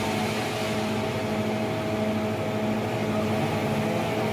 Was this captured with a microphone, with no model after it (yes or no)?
yes